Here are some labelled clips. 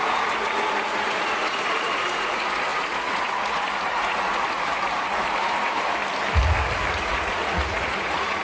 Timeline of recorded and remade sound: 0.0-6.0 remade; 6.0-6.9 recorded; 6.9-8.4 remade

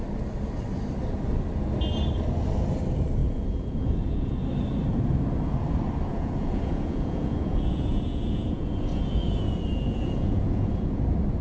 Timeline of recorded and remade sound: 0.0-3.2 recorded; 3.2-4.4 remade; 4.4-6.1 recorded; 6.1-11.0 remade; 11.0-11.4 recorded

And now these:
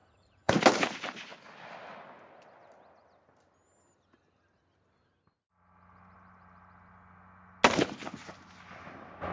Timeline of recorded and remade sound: 0.0-0.5 remade; 0.5-9.3 recorded

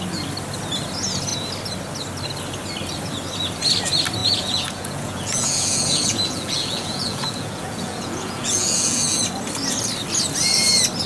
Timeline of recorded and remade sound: 0.0-4.2 recorded; 4.2-9.2 remade; 9.2-11.1 recorded

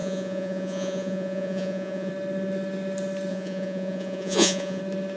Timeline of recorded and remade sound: 0.0-2.1 remade; 2.1-3.3 recorded; 3.3-4.8 remade; 4.8-5.2 recorded